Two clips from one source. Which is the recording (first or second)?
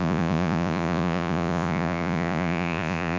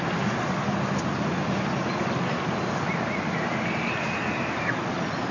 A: second